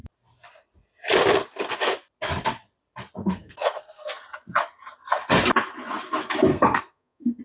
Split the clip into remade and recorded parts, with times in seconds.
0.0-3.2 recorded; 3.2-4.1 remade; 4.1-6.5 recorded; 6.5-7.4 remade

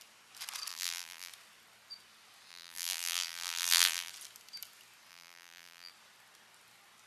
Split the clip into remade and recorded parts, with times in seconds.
0.0-0.7 recorded; 0.7-1.3 remade; 1.3-2.5 recorded; 2.5-4.1 remade; 4.1-5.1 recorded; 5.1-5.9 remade; 5.9-7.1 recorded

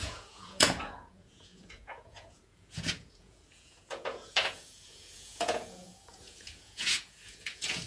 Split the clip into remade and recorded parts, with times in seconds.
0.0-7.9 remade

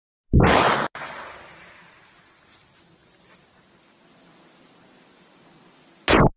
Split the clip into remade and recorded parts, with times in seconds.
0.0-6.4 recorded

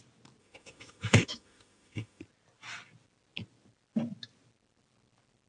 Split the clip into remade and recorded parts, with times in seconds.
0.0-0.4 recorded; 0.4-2.2 remade; 2.2-5.5 recorded

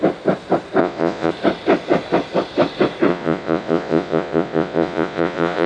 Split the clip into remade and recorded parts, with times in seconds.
0.0-0.8 recorded; 0.8-1.3 remade; 1.3-3.1 recorded; 3.1-5.7 remade